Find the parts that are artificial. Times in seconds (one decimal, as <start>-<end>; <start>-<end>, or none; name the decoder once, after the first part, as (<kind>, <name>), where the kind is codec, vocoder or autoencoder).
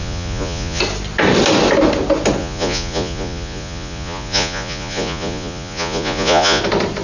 0.0-0.8 (vocoder, Vocos); 2.4-6.6